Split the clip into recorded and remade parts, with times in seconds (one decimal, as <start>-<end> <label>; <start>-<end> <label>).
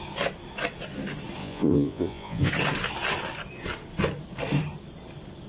0.0-1.4 recorded; 1.4-2.5 remade; 2.5-5.5 recorded